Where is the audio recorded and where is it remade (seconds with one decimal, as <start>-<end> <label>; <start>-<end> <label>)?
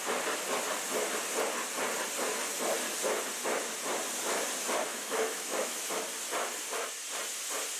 0.0-4.9 recorded; 4.9-5.9 remade; 5.9-7.8 recorded